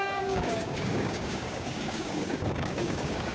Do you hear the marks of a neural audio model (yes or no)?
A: yes